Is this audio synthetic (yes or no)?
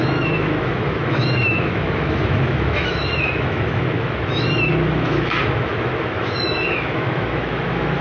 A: yes